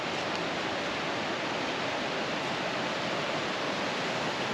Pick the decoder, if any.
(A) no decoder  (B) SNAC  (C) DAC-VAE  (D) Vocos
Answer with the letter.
A